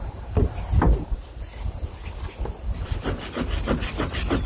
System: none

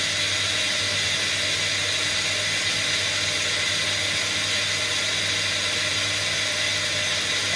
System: none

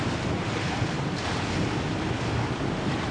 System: none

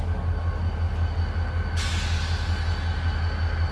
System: none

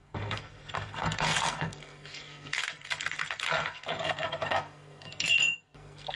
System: codec, SNAC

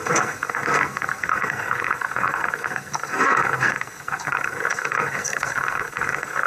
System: codec, SNAC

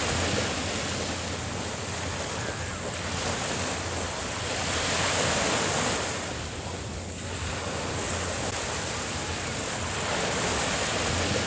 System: none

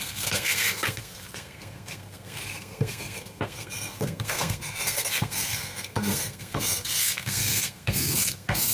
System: codec, SNAC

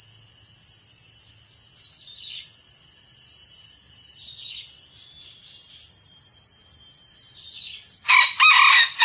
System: none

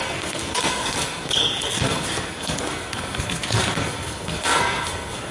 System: codec, SNAC